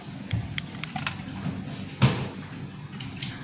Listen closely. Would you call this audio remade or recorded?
recorded